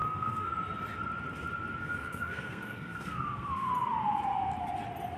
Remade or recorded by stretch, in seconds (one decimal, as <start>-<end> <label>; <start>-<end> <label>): 0.0-0.5 remade; 0.5-1.8 recorded; 1.8-3.7 remade; 3.7-5.2 recorded